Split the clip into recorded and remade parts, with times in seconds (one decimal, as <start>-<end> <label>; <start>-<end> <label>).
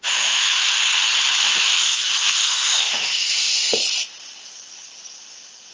0.0-0.8 remade; 0.8-1.4 recorded; 1.4-3.8 remade; 3.8-5.7 recorded